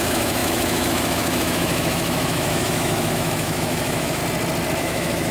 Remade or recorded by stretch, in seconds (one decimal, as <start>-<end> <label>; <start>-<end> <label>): 0.0-4.2 remade; 4.2-4.8 recorded; 4.8-5.3 remade